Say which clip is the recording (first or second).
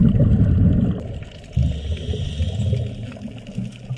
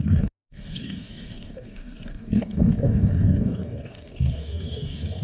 first